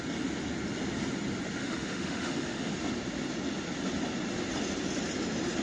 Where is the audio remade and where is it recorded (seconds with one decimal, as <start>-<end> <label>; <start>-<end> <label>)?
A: 0.0-1.6 recorded; 1.6-2.7 remade; 2.7-5.6 recorded